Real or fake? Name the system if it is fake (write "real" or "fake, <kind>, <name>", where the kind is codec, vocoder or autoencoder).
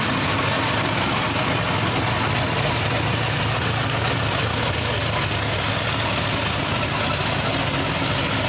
real